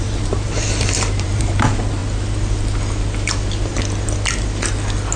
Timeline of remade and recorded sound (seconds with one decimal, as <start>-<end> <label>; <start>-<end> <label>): 0.0-2.0 remade; 2.0-5.2 recorded